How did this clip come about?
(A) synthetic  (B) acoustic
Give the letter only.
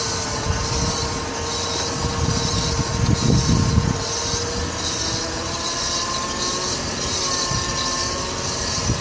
B